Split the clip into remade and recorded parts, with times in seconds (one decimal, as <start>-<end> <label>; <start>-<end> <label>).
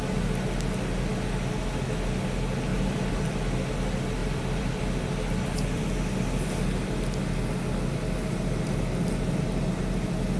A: 0.0-2.7 recorded; 2.7-3.2 remade; 3.2-4.2 recorded; 4.2-4.8 remade; 4.8-10.4 recorded